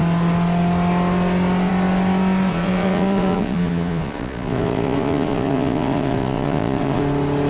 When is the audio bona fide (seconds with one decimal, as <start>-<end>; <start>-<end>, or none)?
0.0-2.5; 7.0-7.5